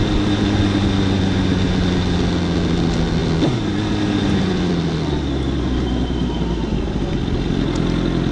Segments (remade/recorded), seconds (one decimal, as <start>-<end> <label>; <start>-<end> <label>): 0.0-8.3 recorded